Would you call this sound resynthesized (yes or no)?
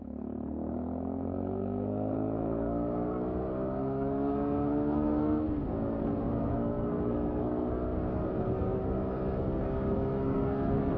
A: yes